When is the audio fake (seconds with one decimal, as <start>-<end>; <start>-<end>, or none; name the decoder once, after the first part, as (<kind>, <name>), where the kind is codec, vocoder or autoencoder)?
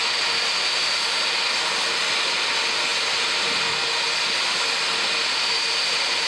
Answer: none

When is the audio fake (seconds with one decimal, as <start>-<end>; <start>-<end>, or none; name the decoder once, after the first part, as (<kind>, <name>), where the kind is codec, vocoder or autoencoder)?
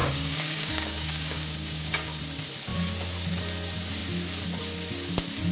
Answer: 0.0-2.2 (codec, DAC)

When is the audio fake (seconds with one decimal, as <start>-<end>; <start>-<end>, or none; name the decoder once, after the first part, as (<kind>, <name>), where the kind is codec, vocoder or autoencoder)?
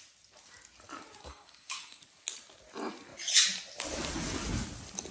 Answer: 1.2-2.0 (codec, SNAC)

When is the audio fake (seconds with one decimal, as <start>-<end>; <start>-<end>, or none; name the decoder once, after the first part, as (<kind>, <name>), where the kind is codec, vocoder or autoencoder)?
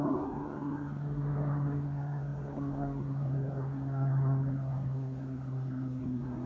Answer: 0.0-6.5 (codec, SNAC)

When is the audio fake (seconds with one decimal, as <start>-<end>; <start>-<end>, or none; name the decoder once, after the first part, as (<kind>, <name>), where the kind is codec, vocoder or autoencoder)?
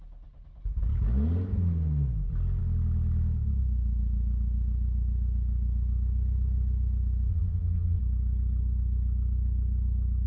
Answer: 7.3-8.0 (vocoder, BigVGAN v2)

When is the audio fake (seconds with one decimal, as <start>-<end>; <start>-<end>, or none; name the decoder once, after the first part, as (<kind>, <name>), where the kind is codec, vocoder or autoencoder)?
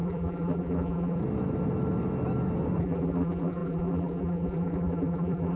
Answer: 0.0-1.2 (vocoder, BigVGAN v2); 2.8-5.6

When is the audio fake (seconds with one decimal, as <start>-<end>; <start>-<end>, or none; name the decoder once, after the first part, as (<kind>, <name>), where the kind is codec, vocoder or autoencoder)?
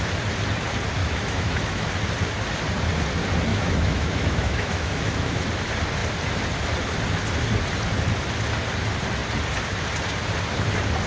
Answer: 1.0-1.9 (autoencoder, DAC-VAE); 3.5-5.5